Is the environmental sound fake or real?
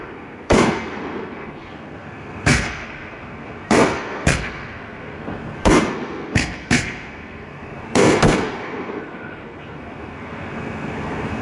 fake